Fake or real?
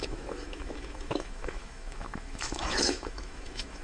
fake